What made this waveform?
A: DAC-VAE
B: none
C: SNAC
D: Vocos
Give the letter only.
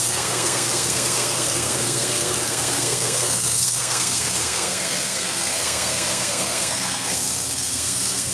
C